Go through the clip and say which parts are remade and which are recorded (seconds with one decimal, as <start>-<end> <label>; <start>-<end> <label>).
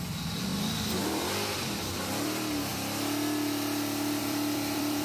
0.0-0.5 remade; 0.5-1.1 recorded; 1.1-2.7 remade; 2.7-4.2 recorded; 4.2-5.0 remade